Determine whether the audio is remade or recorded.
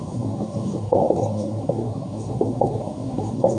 remade